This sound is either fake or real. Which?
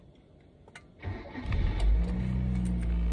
real